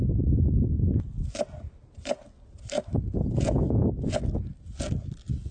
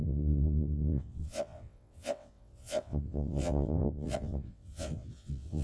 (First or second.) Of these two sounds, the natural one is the first